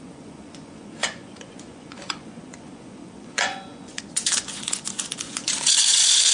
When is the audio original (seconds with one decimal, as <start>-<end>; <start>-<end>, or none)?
none